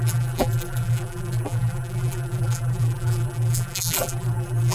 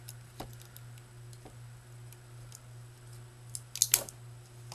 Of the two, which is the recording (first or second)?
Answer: second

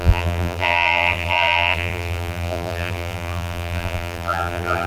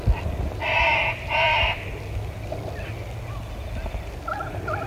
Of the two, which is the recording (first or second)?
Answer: second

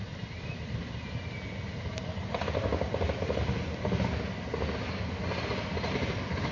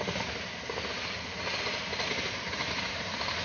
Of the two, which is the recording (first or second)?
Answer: first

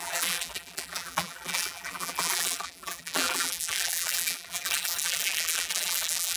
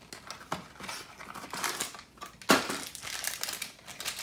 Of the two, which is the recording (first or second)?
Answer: second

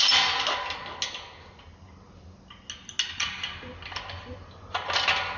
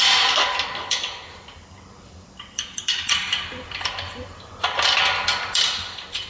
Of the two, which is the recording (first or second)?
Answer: first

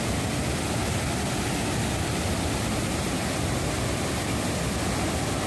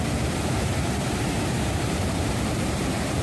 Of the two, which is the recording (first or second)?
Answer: first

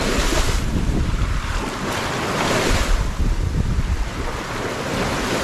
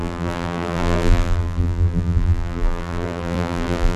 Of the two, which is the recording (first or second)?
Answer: first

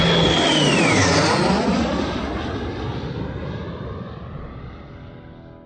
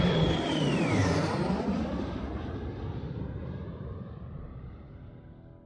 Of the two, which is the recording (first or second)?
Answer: first